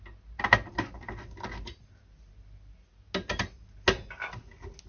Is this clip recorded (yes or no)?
yes